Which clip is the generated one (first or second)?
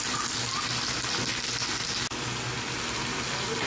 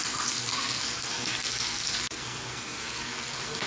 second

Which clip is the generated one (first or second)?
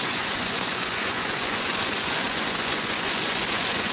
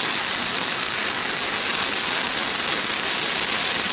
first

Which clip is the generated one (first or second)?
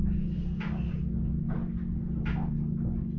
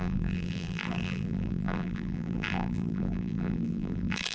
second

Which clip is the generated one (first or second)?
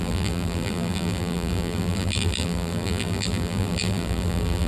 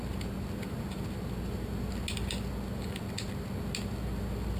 first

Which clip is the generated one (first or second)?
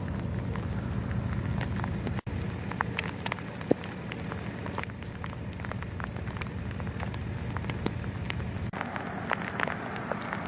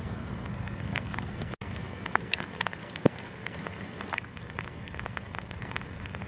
second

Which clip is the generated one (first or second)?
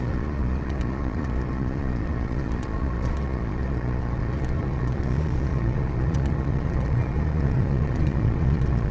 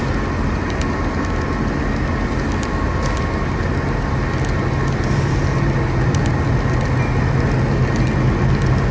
first